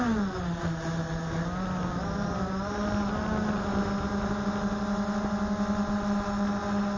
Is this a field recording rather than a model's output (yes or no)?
yes